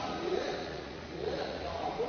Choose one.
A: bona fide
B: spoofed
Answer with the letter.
B